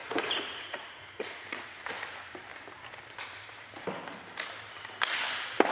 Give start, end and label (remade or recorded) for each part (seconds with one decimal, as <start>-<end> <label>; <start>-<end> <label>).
0.0-1.8 remade; 1.8-5.7 recorded